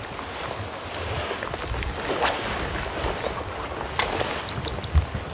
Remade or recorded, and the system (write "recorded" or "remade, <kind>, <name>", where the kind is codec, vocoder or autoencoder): recorded